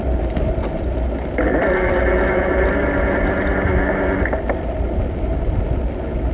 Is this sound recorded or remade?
recorded